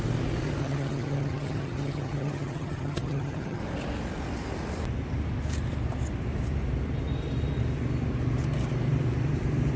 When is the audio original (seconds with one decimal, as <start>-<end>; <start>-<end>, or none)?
0.0-0.6; 3.6-9.8